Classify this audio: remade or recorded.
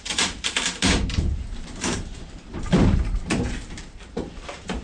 remade